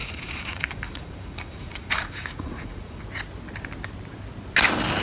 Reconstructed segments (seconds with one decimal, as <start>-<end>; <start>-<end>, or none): 0.0-3.0